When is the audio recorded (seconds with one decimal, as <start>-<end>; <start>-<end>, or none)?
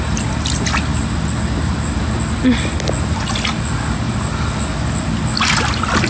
0.0-6.1